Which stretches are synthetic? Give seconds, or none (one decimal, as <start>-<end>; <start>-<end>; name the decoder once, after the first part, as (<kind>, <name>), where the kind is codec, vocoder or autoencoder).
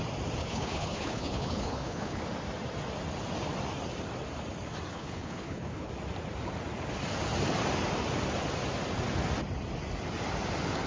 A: 0.4-2.2 (codec, HILCodec); 4.9-5.9